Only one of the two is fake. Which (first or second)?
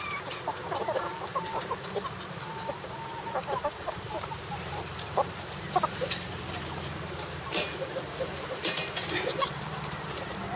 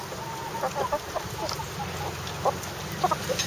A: first